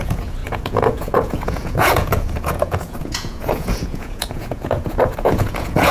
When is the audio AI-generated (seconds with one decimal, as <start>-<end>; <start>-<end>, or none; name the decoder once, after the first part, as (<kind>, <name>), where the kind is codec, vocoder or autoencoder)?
0.0-5.9 (vocoder, Vocos)